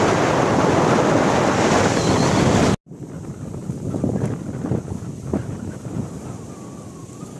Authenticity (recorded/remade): recorded